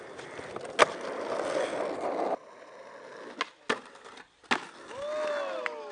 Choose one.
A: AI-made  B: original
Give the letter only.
B